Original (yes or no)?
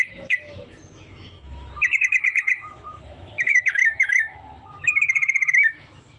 no